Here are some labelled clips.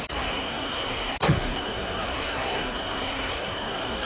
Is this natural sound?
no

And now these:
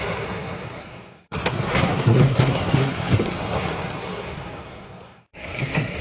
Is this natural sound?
no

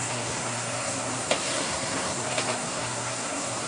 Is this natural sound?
no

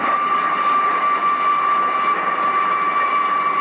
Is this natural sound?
yes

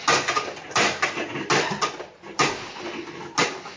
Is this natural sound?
yes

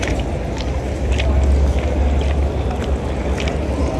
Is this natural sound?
yes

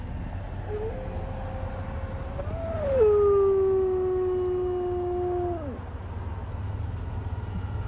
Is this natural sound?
yes